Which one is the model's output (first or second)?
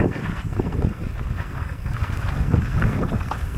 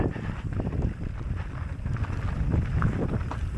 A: first